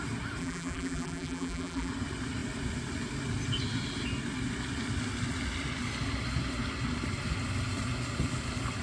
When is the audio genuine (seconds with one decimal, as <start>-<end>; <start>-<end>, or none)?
0.0-0.4; 1.9-8.8